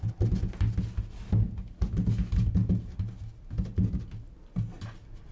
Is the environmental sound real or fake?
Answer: real